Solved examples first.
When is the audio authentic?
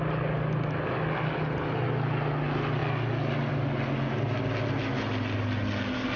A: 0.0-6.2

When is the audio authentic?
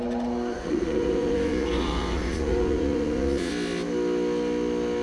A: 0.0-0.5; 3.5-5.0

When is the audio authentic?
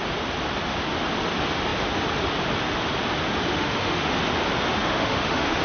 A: 0.0-3.5; 4.1-4.8